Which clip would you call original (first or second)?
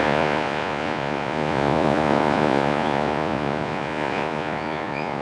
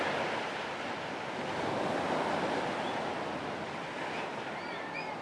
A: second